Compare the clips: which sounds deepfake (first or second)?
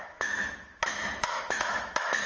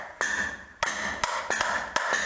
first